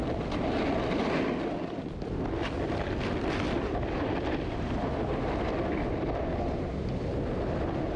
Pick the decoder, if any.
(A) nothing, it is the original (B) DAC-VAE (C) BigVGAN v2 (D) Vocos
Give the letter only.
A